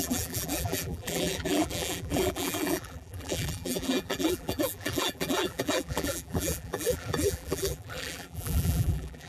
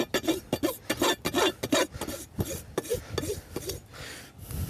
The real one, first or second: second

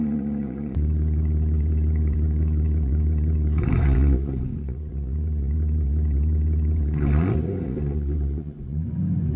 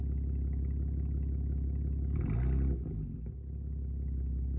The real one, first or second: second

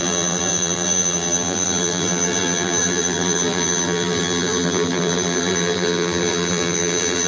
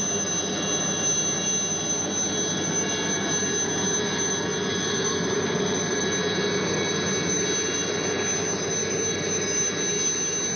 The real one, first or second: second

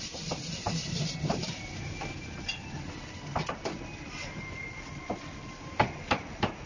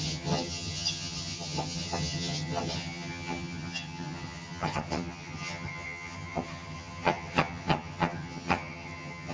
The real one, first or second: first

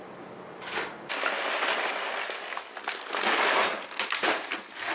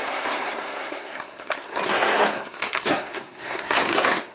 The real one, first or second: first